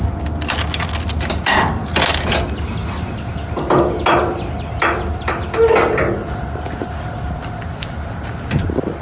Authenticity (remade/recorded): recorded